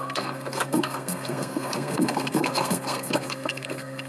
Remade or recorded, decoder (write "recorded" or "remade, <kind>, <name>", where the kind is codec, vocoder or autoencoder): remade, codec, SNAC